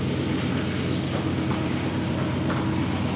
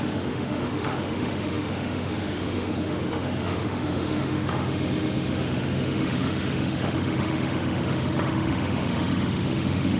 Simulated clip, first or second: second